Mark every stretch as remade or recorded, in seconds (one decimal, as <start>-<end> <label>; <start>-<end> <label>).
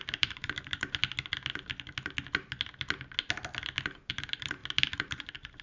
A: 0.0-1.0 remade; 1.0-4.1 recorded; 4.1-5.6 remade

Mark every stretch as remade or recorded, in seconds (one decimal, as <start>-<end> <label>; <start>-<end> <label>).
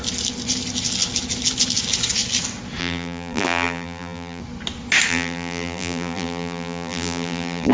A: 0.0-2.8 recorded; 2.8-4.4 remade; 4.4-5.1 recorded; 5.1-7.7 remade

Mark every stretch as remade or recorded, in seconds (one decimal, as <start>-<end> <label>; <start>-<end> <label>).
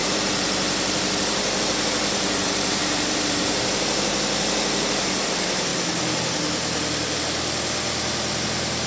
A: 0.0-5.7 remade; 5.7-8.4 recorded; 8.4-8.9 remade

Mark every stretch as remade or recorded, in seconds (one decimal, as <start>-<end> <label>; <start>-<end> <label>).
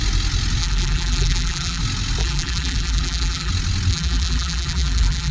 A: 0.0-0.6 recorded; 0.6-1.8 remade; 1.8-2.2 recorded; 2.2-3.5 remade; 3.5-3.9 recorded; 3.9-5.3 remade